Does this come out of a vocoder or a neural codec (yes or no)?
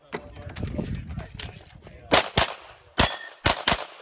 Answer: no